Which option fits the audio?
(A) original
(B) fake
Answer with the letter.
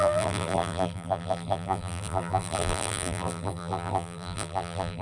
B